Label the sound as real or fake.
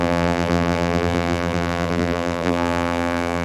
fake